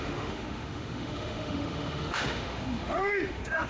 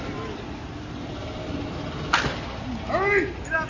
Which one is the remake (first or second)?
first